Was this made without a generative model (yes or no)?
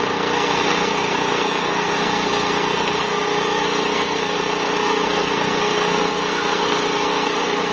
no